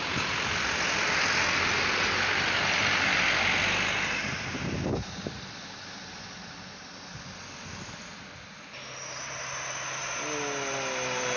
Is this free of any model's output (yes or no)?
yes